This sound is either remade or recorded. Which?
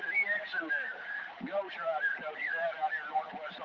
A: remade